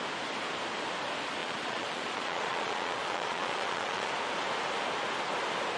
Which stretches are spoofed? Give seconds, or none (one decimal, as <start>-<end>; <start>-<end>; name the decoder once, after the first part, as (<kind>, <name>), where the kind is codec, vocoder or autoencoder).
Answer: 1.4-4.1 (vocoder, Vocos)